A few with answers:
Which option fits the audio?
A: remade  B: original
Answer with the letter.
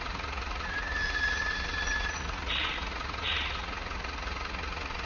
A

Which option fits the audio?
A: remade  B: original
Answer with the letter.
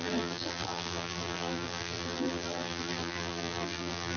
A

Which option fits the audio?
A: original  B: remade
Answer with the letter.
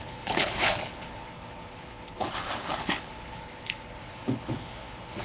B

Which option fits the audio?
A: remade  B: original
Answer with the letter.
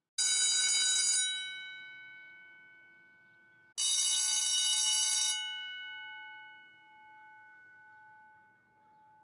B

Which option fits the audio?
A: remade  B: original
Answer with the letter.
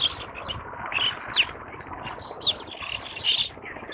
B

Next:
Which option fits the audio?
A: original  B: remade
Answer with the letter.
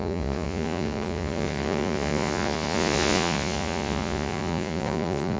B